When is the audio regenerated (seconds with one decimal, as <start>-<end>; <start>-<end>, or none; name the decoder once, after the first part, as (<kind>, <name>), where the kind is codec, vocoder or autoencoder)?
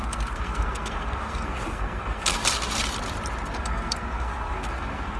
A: 0.0-2.4 (codec, SNAC); 3.6-5.2